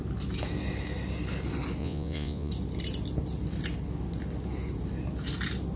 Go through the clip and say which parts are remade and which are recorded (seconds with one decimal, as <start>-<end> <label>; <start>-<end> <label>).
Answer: 0.0-1.8 recorded; 1.8-2.5 remade; 2.5-5.8 recorded